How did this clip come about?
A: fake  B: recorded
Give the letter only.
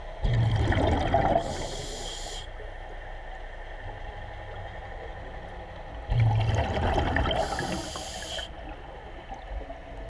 B